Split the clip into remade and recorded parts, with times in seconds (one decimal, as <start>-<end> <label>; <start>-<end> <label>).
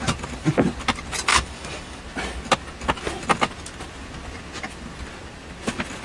0.0-1.3 recorded; 1.3-2.0 remade; 2.0-6.0 recorded